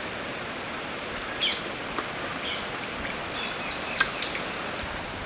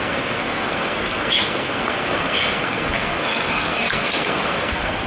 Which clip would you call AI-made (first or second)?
second